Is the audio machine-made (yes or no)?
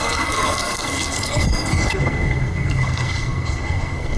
yes